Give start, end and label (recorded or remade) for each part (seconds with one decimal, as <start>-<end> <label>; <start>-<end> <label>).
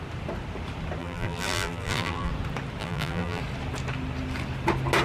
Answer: 0.0-1.0 recorded; 1.0-2.3 remade; 2.3-2.8 recorded; 2.8-3.4 remade; 3.4-5.0 recorded